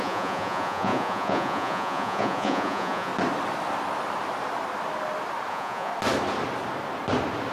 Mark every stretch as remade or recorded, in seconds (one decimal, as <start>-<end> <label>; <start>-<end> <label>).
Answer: 0.0-3.1 remade; 3.1-5.5 recorded; 5.5-5.9 remade; 5.9-7.5 recorded